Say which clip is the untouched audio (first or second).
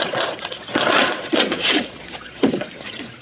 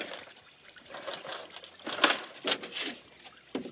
second